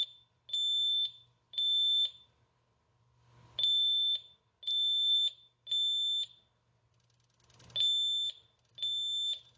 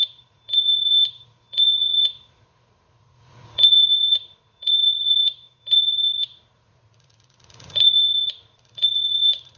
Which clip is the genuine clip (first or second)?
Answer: first